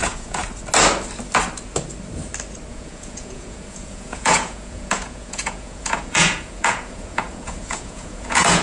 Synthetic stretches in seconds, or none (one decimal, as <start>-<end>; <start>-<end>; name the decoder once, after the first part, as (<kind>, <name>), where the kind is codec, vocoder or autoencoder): 0.0-0.4 (vocoder, Vocos); 2.7-8.6